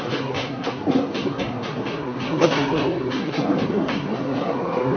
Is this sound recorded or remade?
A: remade